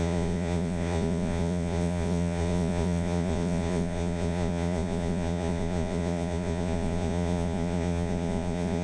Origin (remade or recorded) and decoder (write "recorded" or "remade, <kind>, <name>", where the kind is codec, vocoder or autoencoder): remade, vocoder, Vocos